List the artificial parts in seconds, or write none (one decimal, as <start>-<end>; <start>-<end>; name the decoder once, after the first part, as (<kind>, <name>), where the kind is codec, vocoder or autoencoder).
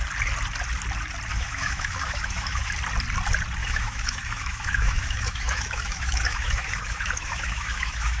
1.3-2.7 (autoencoder, DAC-VAE); 3.6-8.2